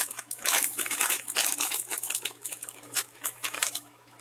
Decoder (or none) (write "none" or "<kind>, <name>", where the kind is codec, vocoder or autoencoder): autoencoder, DAC-VAE